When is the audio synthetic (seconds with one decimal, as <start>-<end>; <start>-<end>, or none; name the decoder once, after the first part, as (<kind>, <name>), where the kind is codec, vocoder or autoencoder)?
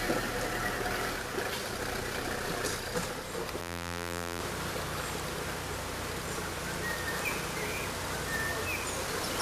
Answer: 3.6-4.4 (vocoder, BigVGAN v2)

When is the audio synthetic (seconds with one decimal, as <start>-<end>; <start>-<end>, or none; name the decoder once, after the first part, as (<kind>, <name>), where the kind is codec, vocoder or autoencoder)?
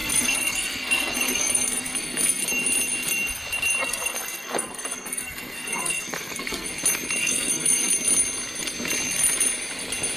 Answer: 0.0-2.4 (codec, SNAC); 3.8-6.7; 7.2-7.9